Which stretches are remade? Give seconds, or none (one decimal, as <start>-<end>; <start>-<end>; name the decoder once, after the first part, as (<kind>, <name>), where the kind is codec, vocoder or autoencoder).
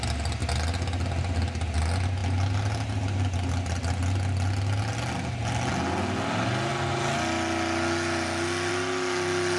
none